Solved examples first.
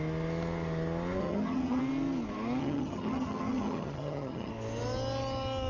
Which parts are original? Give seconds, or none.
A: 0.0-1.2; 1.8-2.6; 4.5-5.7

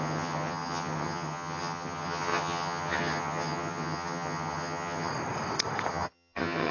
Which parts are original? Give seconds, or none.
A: 5.1-5.9

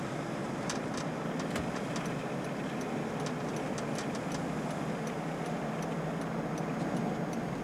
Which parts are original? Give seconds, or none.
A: 0.0-0.4; 1.1-7.6

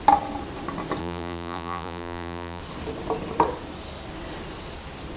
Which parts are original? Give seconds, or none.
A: 0.0-1.0; 2.6-5.2

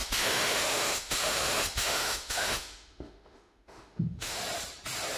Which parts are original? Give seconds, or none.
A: 4.4-5.2

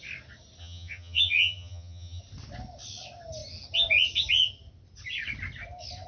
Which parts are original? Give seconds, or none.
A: 0.0-0.6; 2.2-6.1

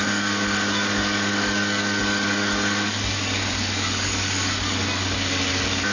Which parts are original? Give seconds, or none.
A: none

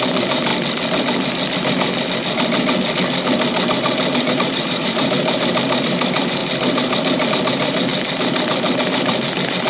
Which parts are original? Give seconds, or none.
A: 0.5-4.3; 6.4-7.3; 7.9-8.9